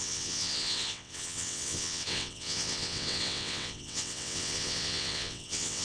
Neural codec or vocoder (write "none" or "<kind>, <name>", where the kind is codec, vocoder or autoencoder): vocoder, WaveNeXt